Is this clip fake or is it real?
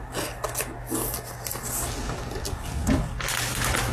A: real